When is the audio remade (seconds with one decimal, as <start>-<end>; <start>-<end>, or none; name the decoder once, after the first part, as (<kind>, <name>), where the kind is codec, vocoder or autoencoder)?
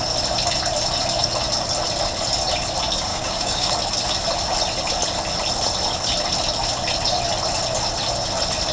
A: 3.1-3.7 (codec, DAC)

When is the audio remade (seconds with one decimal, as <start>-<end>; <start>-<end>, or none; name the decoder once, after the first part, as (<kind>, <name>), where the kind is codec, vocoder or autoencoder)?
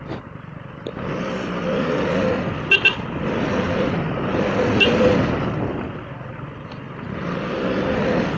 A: none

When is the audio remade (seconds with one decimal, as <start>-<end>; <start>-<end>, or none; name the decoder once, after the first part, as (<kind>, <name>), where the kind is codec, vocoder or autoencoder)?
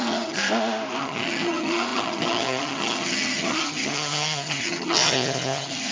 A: 0.0-0.4 (vocoder, HiFi-GAN); 1.0-5.9